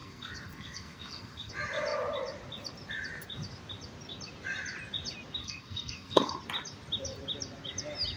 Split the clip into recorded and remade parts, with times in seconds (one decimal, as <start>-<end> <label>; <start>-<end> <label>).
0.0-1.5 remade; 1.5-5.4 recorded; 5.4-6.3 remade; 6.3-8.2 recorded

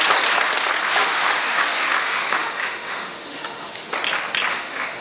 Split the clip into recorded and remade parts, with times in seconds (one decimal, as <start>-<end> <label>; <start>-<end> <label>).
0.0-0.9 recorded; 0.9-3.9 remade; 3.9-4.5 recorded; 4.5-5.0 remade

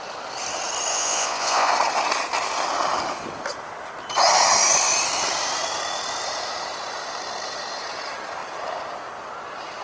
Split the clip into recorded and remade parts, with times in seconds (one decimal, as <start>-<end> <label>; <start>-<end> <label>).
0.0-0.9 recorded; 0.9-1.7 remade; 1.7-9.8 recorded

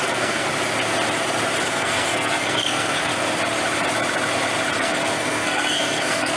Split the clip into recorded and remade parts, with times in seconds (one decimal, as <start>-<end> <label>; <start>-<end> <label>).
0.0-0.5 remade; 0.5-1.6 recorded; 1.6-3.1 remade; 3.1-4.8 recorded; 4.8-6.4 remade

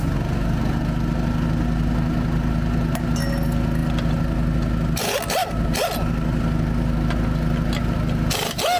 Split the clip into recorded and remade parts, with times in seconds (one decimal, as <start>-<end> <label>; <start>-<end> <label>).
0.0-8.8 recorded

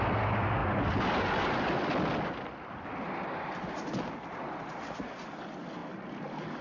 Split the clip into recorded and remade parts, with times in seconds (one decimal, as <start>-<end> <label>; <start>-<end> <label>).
0.0-6.6 recorded

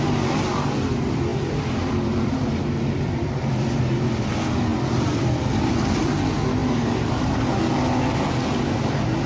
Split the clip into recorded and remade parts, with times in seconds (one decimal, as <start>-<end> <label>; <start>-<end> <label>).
0.0-1.3 recorded; 1.3-3.8 remade; 3.8-4.7 recorded; 4.7-6.1 remade; 6.1-9.3 recorded

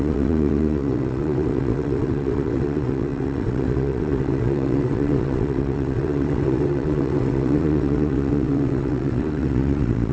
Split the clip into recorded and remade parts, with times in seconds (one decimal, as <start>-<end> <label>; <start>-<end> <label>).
0.0-10.1 remade